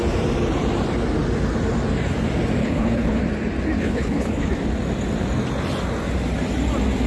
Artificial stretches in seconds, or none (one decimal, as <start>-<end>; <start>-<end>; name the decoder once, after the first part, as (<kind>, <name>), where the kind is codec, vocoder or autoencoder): 2.6-3.2 (codec, HILCodec); 3.8-4.5